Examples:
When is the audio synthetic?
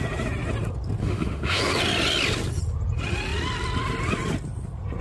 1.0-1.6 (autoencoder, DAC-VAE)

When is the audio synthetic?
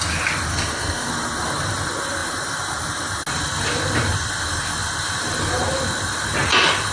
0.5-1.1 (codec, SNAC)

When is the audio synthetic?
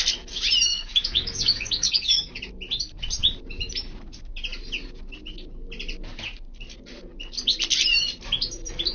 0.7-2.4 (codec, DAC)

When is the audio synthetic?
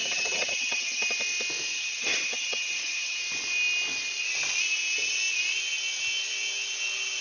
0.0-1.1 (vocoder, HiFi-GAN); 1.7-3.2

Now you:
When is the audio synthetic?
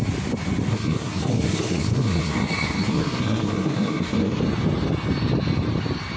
0.7-4.4 (codec, SNAC)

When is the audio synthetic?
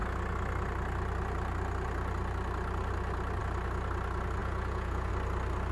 4.4-5.1 (vocoder, Vocos)